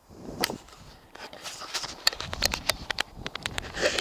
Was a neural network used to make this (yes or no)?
yes